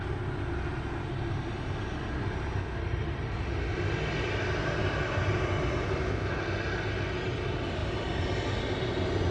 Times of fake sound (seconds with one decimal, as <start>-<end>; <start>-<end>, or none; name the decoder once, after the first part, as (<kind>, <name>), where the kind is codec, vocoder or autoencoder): none